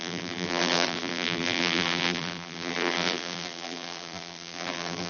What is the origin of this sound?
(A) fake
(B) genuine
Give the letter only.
A